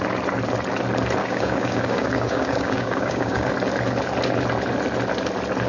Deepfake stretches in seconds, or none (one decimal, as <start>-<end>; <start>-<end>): 1.2-3.5